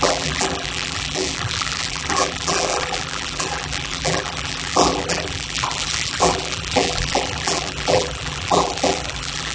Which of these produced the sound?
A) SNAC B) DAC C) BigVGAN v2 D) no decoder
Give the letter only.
C